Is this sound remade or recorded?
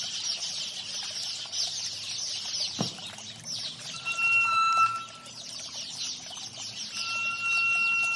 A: recorded